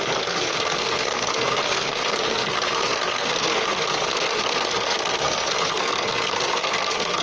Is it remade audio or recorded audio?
remade